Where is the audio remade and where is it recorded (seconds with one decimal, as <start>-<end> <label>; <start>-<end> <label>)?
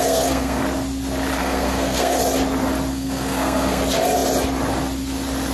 0.0-0.6 remade; 0.6-1.4 recorded; 1.4-2.2 remade; 2.2-2.9 recorded; 2.9-3.8 remade; 3.8-5.5 recorded